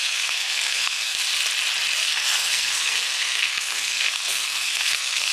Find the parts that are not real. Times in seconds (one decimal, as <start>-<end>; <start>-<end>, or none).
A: 0.0-1.2; 2.0-5.3